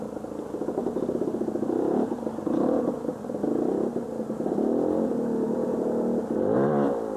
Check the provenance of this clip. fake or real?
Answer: real